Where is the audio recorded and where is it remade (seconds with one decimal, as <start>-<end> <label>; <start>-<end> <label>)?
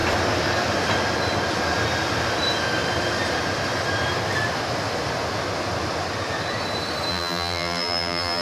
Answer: 0.0-7.1 recorded; 7.1-8.4 remade